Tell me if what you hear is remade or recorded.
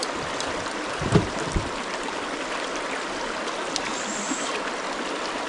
recorded